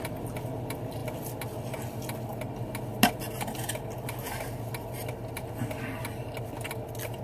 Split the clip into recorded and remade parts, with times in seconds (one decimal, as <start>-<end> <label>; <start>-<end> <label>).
0.0-7.2 recorded